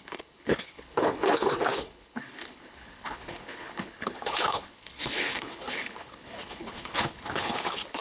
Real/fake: fake